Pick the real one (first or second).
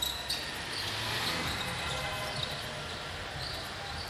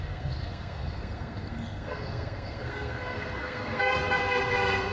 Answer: first